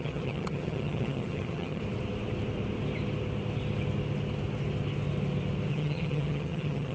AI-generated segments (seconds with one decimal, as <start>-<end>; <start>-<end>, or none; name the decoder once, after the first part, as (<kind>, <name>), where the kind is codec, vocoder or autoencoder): 0.0-1.8 (vocoder, HiFi-GAN); 5.7-6.9